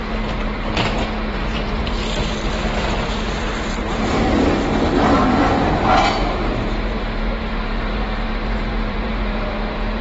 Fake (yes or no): yes